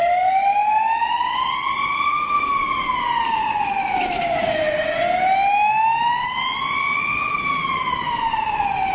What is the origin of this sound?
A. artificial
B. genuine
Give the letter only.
B